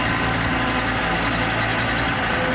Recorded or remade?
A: recorded